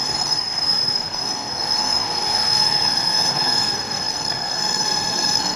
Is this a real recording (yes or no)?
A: no